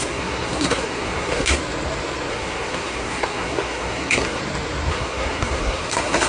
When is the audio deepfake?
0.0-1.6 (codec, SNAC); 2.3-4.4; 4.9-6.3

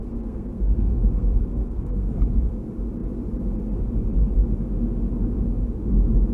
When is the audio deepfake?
0.0-2.4 (codec, SNAC)

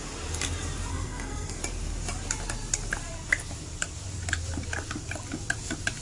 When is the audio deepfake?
0.9-1.6 (codec, SNAC)